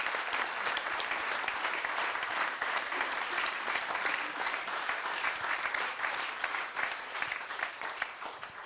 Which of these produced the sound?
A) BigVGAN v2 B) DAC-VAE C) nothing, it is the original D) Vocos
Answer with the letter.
A